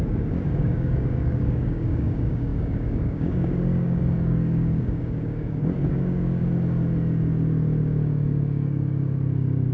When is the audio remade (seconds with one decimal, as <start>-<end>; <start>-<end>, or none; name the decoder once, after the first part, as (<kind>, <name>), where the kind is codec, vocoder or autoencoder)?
0.0-6.4 (codec, DAC); 7.8-9.7